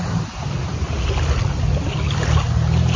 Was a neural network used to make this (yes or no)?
no